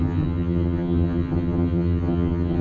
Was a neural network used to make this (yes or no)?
yes